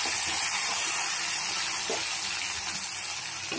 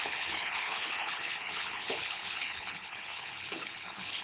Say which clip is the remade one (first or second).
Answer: second